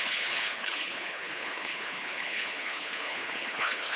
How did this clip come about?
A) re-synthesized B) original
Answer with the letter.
A